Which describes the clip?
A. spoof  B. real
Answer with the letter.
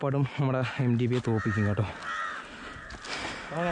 B